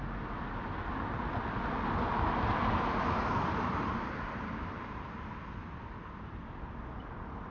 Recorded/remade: recorded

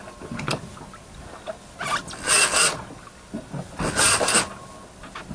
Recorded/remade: recorded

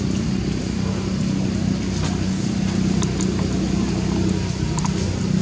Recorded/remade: recorded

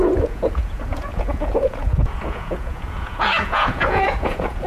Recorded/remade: remade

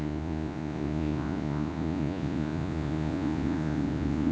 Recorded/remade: remade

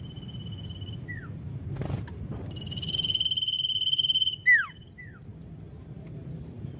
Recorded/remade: recorded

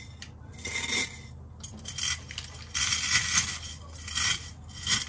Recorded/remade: recorded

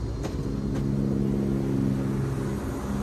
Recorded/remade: recorded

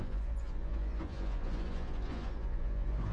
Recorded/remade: remade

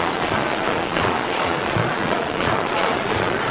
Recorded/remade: remade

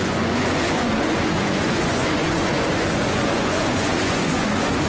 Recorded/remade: remade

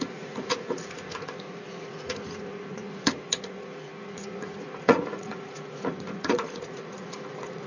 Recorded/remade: remade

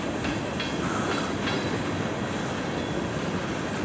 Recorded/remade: recorded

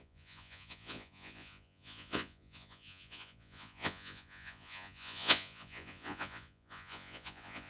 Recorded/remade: remade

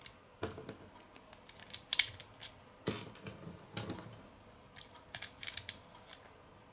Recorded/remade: recorded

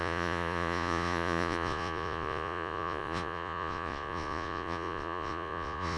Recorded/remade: remade